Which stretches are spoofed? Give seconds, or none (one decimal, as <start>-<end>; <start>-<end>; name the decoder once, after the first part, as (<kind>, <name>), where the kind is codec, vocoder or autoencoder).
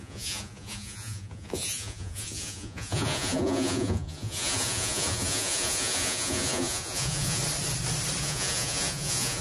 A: 0.0-7.4 (vocoder, Vocos); 8.2-9.4